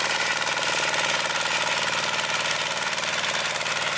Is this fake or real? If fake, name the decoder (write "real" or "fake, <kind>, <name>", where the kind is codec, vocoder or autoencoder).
real